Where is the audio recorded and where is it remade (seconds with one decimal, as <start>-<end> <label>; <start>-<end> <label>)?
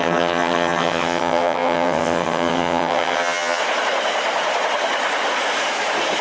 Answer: 0.0-3.6 remade; 3.6-6.2 recorded